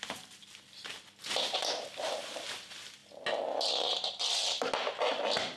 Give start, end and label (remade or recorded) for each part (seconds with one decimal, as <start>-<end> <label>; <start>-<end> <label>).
0.0-5.6 recorded